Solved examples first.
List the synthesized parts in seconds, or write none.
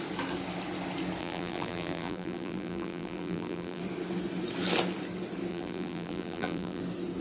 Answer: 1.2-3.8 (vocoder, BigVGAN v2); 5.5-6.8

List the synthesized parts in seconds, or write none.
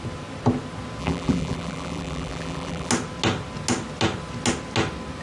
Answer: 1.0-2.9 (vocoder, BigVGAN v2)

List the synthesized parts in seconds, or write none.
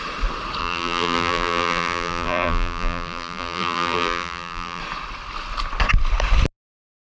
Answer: 0.6-4.8 (vocoder, BigVGAN v2)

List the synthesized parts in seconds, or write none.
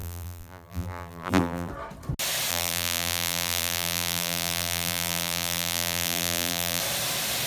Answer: 0.0-1.7 (vocoder, BigVGAN v2); 2.5-6.8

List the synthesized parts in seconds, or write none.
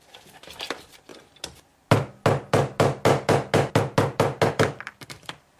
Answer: 0.0-1.1 (vocoder, BigVGAN v2); 4.5-5.6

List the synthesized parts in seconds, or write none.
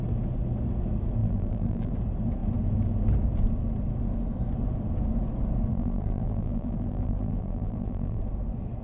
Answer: 1.2-1.9 (vocoder, BigVGAN v2); 5.7-8.2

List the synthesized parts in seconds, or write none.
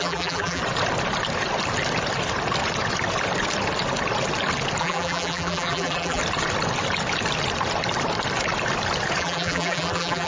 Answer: 0.0-0.6 (vocoder, BigVGAN v2); 4.8-6.2; 9.2-10.3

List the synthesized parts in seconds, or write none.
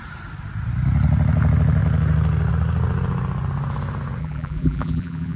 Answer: 4.2-5.4 (vocoder, BigVGAN v2)